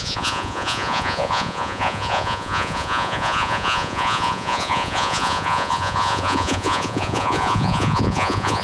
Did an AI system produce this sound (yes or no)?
yes